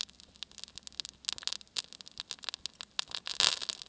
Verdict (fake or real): real